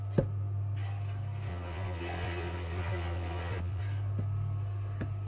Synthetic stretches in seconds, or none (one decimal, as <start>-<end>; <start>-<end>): 1.5-3.8